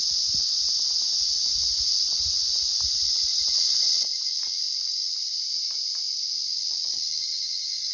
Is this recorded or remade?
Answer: recorded